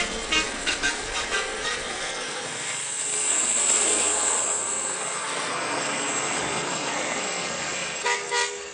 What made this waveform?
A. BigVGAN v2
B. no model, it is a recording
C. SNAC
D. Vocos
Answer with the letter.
C